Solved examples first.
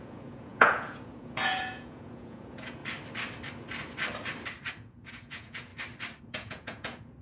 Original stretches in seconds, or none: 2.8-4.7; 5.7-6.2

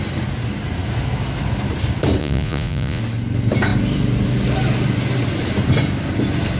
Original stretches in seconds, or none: 0.0-2.2; 3.0-6.6

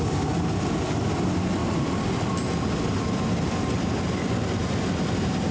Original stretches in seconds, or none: 0.0-5.5

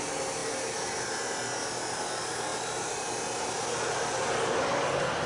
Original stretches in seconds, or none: 0.0-5.3

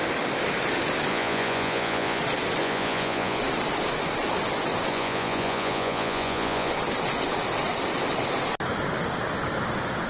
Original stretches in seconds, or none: 0.0-1.1; 2.2-2.6; 3.4-4.9; 6.7-10.1

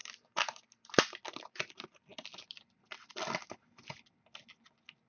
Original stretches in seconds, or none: 0.0-5.1

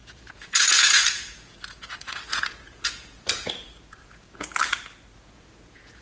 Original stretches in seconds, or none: 4.5-5.2

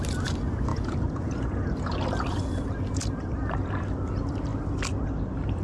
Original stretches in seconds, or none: 0.0-0.7; 1.6-5.6